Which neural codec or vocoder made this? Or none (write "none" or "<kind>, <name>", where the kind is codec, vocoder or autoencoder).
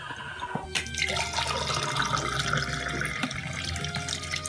none